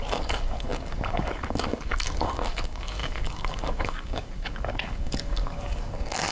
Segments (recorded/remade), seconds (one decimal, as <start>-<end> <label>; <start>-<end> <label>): 0.0-6.3 remade